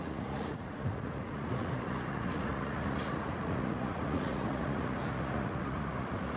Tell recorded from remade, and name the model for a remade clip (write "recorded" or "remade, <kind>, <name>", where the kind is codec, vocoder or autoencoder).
remade, vocoder, Vocos